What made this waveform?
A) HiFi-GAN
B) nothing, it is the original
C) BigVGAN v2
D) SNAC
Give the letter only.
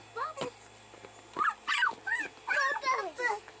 B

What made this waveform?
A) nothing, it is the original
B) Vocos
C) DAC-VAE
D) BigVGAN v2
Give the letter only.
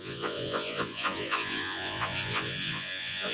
B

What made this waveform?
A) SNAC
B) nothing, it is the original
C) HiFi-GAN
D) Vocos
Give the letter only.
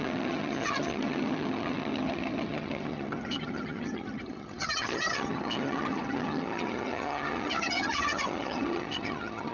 C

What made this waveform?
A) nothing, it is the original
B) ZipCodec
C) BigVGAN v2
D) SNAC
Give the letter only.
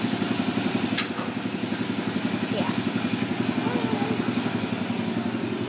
A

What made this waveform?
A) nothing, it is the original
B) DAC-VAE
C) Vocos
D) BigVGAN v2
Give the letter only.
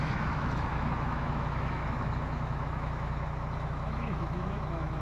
B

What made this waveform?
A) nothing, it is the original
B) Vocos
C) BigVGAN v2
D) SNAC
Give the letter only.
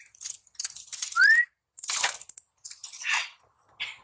A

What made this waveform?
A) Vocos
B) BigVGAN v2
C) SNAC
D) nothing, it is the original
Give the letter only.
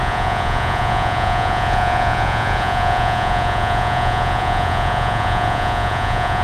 A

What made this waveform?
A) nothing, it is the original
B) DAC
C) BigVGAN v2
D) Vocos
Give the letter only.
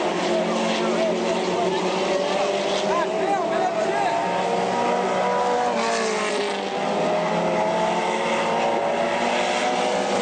A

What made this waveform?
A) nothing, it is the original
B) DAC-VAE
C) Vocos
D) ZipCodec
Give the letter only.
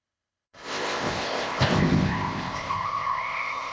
D